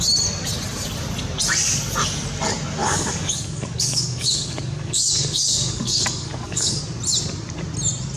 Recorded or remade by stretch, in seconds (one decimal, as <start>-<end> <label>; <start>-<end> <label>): 0.0-2.8 recorded; 2.8-6.8 remade; 6.8-8.2 recorded